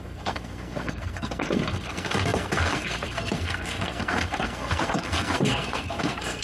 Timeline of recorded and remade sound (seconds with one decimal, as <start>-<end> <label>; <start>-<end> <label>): 0.0-6.4 remade

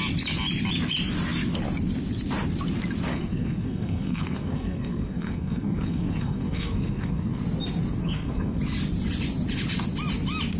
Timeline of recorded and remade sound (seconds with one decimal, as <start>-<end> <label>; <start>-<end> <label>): 0.0-3.1 recorded; 3.1-7.4 remade; 7.4-8.0 recorded; 8.0-8.6 remade; 8.6-10.6 recorded

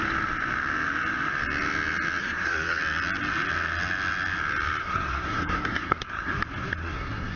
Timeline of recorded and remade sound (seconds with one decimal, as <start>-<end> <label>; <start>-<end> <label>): 0.0-2.2 recorded; 2.2-2.8 remade; 2.8-4.8 recorded; 4.8-6.3 remade; 6.3-6.8 recorded; 6.8-7.4 remade